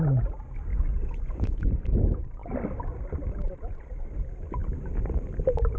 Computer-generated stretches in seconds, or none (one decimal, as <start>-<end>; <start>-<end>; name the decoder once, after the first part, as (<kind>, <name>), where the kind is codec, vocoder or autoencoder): 0.7-1.6 (vocoder, Vocos)